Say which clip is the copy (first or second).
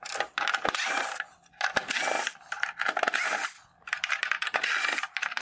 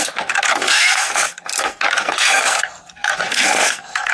second